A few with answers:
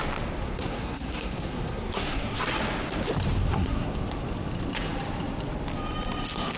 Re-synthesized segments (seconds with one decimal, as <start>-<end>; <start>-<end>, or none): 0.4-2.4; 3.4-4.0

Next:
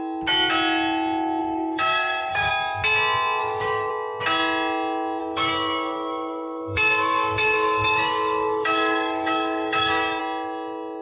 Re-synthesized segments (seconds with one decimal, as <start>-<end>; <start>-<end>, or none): 1.4-2.5; 3.4-3.9; 5.2-10.2

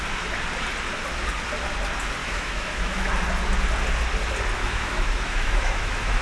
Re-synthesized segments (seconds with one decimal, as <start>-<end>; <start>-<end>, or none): 2.2-3.1; 4.6-6.2